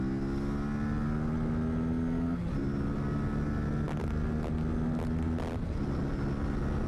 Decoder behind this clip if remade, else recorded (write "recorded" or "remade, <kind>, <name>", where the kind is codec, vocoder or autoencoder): recorded